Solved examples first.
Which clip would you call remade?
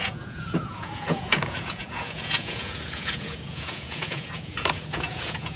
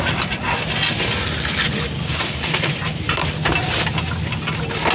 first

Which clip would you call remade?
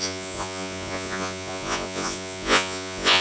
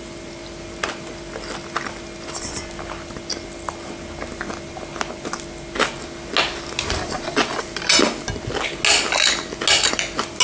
first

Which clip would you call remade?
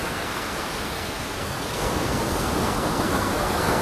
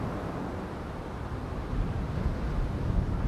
first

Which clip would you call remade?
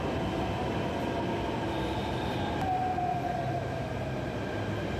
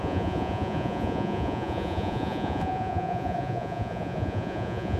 second